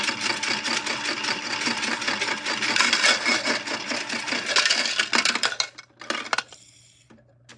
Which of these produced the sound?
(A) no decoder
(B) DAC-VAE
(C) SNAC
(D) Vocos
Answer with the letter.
A